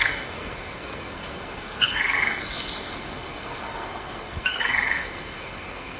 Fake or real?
fake